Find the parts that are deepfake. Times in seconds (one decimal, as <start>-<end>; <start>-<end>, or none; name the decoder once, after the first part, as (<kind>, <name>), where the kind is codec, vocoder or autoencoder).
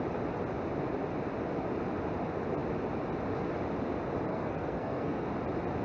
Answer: 4.3-5.2 (codec, SNAC)